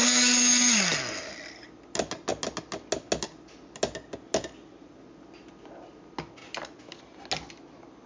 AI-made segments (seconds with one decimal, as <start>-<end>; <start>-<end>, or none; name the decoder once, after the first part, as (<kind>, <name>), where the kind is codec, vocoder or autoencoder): none